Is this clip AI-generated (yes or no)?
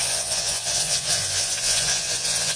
yes